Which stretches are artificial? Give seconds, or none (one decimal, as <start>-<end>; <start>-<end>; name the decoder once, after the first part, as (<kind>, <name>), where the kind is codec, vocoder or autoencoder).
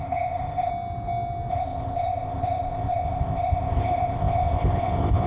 0.0-0.7 (codec, ZipCodec); 1.5-5.3